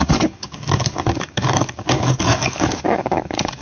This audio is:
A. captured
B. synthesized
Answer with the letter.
B